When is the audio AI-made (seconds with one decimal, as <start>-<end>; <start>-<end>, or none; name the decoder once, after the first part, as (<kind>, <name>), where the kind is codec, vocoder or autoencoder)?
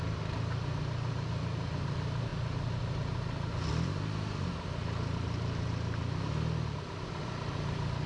none